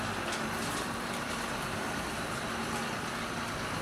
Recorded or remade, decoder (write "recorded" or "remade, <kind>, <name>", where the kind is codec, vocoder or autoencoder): recorded